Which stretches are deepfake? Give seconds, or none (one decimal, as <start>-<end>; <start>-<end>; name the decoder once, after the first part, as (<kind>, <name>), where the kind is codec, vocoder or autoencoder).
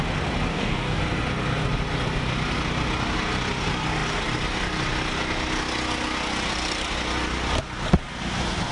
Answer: 0.5-1.0 (codec, DAC)